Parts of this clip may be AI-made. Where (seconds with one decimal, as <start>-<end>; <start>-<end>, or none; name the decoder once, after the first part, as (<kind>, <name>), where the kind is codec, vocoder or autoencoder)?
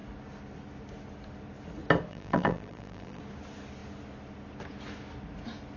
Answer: 2.1-3.2 (vocoder, BigVGAN v2)